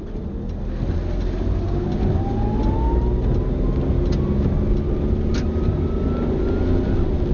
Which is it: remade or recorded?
recorded